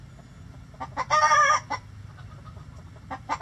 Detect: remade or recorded recorded